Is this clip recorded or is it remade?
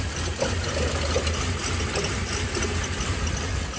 recorded